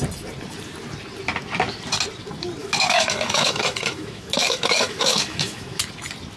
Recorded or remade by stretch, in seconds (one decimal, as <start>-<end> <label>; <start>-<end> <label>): 0.0-2.6 recorded; 2.6-5.8 remade; 5.8-6.4 recorded